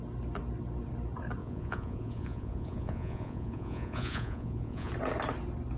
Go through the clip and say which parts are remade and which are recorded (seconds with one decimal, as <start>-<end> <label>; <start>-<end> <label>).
0.0-1.4 recorded; 1.4-4.9 remade; 4.9-5.8 recorded